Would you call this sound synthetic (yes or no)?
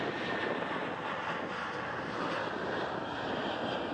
no